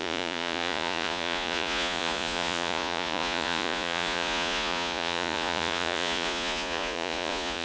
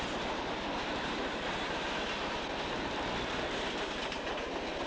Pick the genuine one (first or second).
second